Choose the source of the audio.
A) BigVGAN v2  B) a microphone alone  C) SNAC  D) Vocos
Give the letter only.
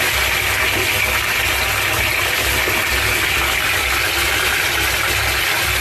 B